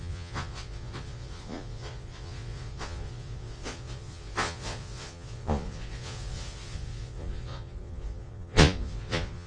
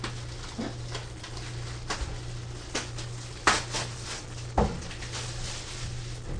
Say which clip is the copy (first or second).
first